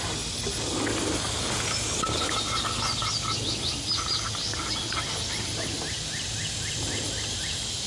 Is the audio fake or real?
real